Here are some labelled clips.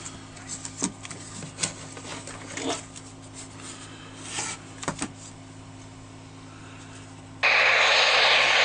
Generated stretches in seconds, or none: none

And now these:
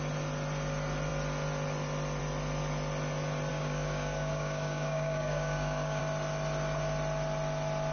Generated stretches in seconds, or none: 3.5-6.0 (codec, DAC)

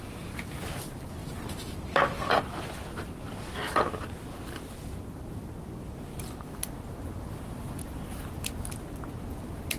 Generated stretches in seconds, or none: none

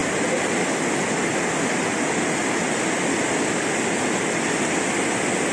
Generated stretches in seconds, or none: none